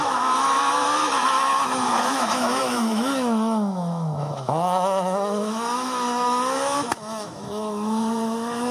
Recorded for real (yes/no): no